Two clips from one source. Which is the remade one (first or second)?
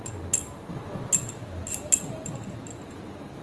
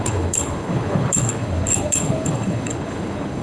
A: second